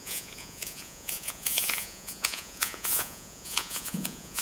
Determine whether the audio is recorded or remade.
remade